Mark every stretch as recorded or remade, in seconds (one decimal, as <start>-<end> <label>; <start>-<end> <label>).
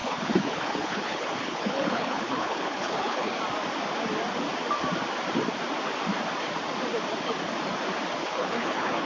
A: 0.0-3.4 remade; 3.4-8.2 recorded; 8.2-9.1 remade